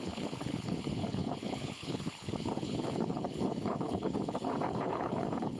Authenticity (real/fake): fake